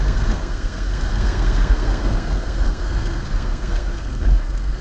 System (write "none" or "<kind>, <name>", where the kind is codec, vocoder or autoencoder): codec, SNAC